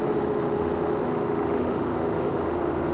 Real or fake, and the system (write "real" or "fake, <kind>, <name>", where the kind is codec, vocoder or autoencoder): fake, autoencoder, DAC-VAE